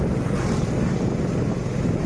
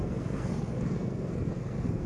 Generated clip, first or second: second